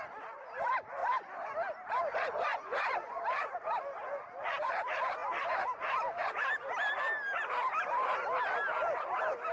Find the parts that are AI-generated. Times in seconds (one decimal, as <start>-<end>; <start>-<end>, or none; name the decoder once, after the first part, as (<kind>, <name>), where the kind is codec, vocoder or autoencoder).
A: 2.5-3.2 (vocoder, Vocos)